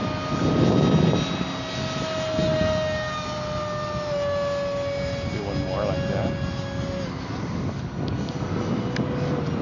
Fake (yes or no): no